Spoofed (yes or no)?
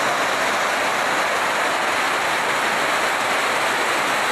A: no